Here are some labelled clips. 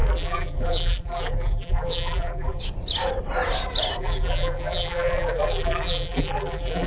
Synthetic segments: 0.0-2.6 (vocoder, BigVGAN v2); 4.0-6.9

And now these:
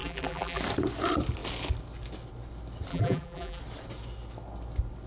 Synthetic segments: 0.0-0.6 (vocoder, BigVGAN v2); 2.9-3.6